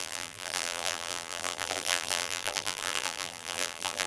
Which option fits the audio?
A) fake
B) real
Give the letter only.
A